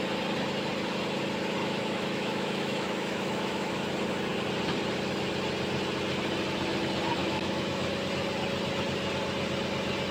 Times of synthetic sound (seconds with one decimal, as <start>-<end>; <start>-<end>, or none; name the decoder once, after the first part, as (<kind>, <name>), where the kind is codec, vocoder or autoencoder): 1.6-3.7 (autoencoder, DAC-VAE); 7.2-7.9